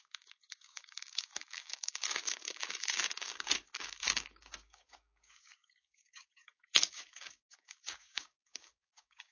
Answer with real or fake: fake